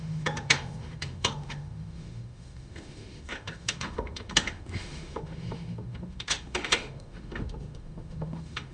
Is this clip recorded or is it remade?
remade